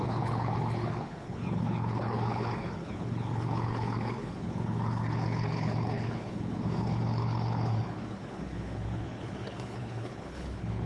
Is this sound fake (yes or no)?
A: yes